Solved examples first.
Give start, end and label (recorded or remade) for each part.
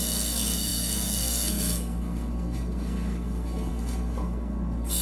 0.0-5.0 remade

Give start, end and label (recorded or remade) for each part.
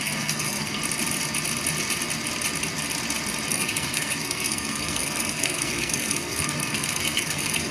0.0-0.8 remade; 0.8-3.5 recorded; 3.5-7.7 remade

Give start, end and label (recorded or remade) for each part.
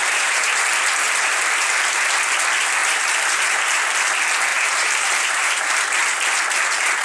0.0-0.6 remade; 0.6-2.8 recorded; 2.8-4.0 remade; 4.0-4.5 recorded; 4.5-5.8 remade; 5.8-7.0 recorded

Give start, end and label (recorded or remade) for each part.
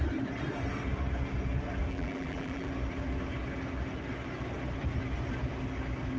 0.0-1.9 recorded; 1.9-2.7 remade; 2.7-6.2 recorded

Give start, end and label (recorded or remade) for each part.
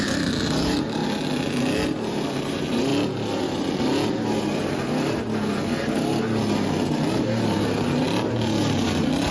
0.0-1.0 remade; 1.0-2.4 recorded; 2.4-2.9 remade; 2.9-7.1 recorded; 7.1-9.3 remade